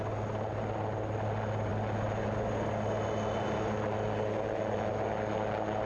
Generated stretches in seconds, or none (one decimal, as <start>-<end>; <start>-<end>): none